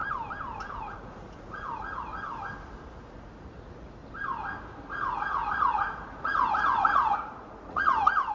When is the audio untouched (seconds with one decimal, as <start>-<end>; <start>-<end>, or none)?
0.0-0.7; 2.1-3.0; 4.0-4.7